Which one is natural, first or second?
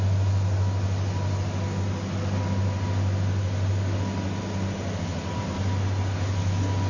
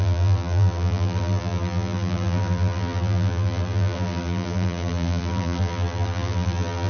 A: first